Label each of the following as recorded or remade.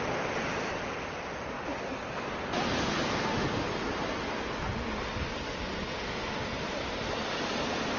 recorded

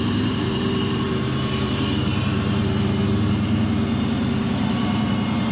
remade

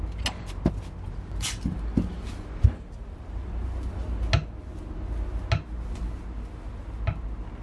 recorded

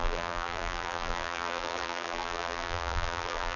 remade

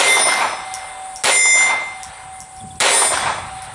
recorded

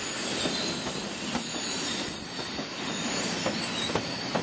recorded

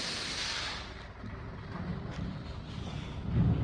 recorded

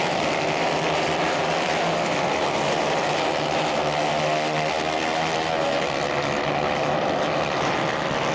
remade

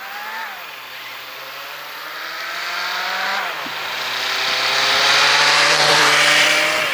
remade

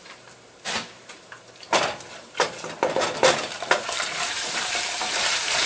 remade